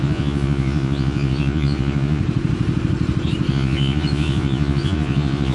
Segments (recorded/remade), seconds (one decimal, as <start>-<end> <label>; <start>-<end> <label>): 0.0-2.2 remade; 2.2-3.5 recorded; 3.5-5.5 remade